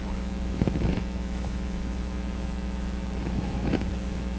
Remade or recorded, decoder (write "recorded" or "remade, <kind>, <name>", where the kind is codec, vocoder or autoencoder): remade, autoencoder, DAC-VAE